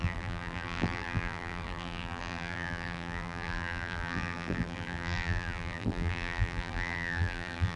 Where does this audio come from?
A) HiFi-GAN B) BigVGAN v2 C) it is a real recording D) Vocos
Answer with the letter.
B